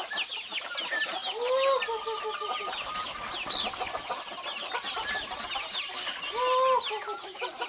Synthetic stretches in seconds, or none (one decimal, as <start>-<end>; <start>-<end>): none